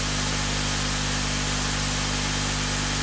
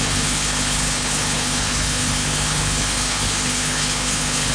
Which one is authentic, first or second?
first